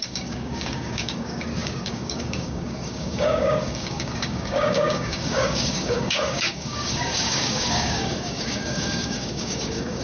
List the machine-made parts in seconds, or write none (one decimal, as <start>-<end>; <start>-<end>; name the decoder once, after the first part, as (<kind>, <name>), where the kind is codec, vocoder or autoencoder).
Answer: 0.0-10.0 (codec, DAC)